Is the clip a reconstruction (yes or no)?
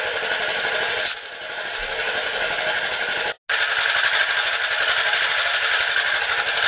no